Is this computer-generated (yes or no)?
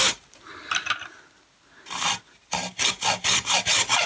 no